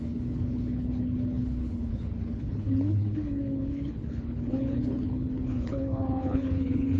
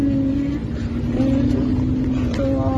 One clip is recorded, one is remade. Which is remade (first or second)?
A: first